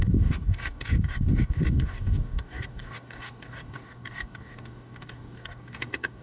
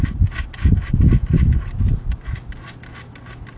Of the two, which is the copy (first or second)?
first